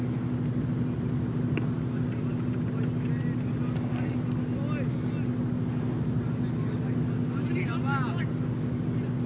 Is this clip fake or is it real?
real